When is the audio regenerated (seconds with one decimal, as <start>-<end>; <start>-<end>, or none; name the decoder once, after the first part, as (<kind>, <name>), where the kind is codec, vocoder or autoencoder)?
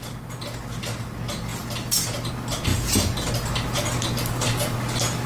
none